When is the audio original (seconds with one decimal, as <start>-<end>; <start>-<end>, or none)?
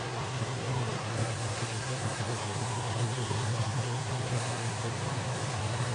4.9-5.5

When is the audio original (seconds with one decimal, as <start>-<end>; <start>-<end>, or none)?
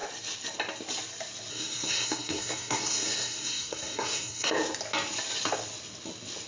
0.0-1.5; 4.5-6.5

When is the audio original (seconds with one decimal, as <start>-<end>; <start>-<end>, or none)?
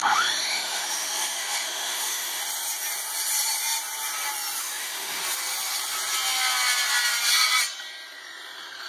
2.4-4.6; 5.2-8.9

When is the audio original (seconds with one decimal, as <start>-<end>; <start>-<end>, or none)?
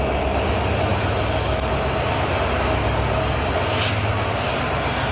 0.0-5.1